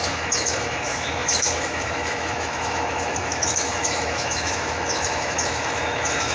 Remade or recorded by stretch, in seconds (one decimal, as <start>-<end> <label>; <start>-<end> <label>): 0.0-6.3 remade